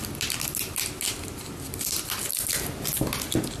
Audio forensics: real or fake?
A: real